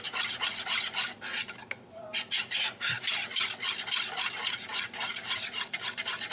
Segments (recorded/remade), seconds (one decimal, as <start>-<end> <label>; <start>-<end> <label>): 0.0-6.3 recorded

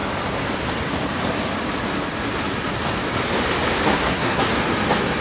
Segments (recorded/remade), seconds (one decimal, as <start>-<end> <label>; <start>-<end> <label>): 0.0-3.9 recorded; 3.9-4.4 remade; 4.4-5.2 recorded

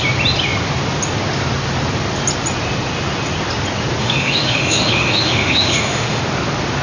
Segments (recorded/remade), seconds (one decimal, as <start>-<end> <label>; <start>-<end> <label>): 0.0-4.0 recorded; 4.0-6.2 remade; 6.2-6.8 recorded

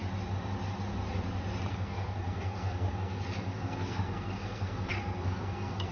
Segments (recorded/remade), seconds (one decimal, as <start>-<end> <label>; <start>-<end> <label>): 0.0-1.7 recorded; 1.7-5.9 remade